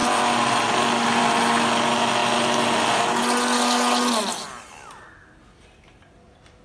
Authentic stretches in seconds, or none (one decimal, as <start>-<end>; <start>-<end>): 0.0-6.6